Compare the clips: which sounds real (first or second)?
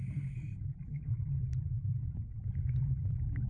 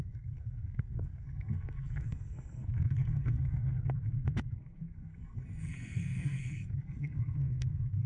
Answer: first